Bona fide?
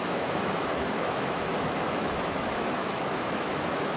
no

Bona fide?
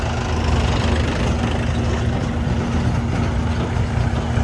yes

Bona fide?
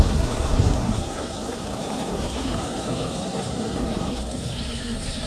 no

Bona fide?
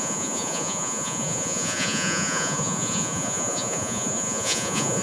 no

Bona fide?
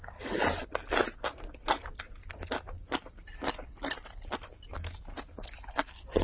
yes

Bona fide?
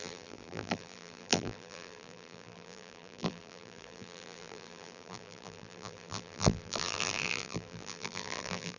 no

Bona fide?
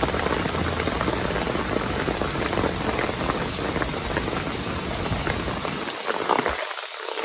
yes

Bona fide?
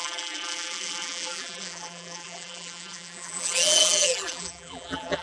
no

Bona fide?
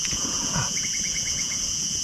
no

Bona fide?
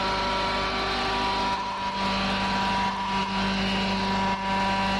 yes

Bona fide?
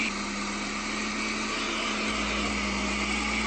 yes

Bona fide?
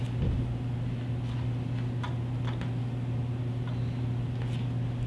yes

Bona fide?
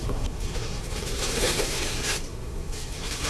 no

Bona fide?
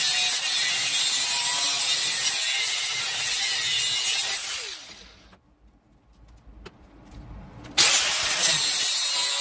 yes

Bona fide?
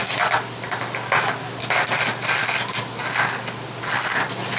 yes